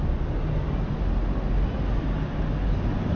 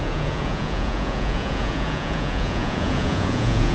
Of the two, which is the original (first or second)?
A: first